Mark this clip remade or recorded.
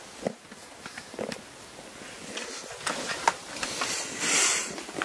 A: recorded